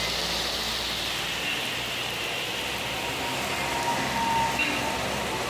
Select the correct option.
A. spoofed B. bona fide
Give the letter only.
B